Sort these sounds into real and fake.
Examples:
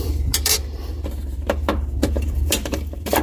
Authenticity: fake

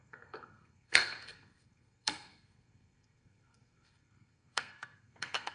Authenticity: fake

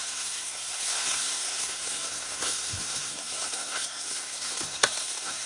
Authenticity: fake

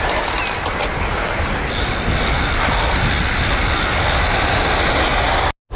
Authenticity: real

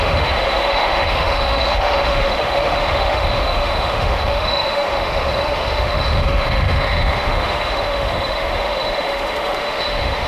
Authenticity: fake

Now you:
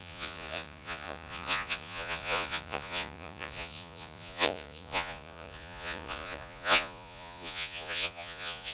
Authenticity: fake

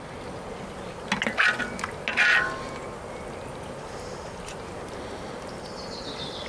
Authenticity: real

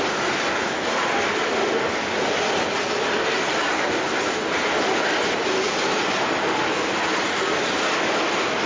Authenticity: real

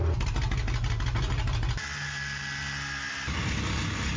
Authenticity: real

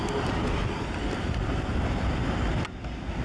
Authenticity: real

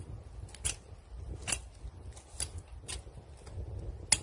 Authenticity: real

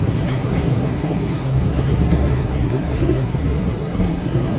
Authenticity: fake